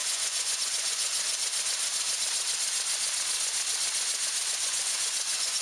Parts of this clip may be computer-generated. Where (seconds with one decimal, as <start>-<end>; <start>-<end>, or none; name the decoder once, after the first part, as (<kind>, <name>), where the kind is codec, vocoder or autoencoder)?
0.0-1.1 (vocoder, Vocos); 4.5-5.6